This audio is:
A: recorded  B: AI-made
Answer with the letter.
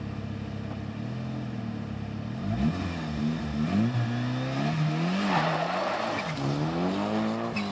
A